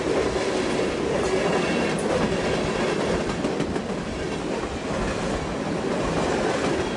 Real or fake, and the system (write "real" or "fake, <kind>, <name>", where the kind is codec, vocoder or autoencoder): real